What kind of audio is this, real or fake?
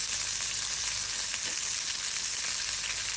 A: real